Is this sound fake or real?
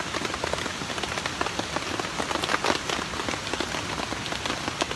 real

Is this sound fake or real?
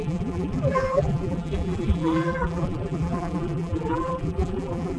fake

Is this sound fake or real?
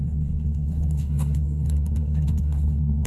fake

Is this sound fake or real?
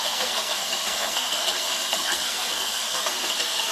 fake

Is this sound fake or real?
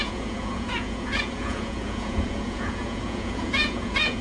fake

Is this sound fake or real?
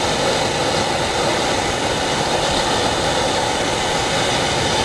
real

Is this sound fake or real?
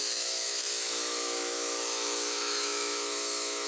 fake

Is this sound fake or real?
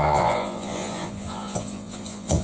fake